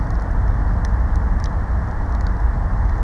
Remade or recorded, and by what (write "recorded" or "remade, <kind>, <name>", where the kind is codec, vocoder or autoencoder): recorded